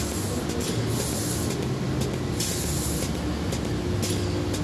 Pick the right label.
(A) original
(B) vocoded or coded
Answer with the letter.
A